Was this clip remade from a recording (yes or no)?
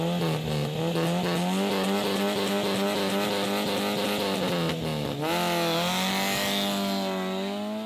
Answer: no